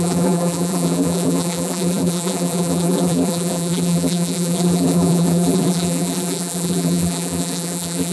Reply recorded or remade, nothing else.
remade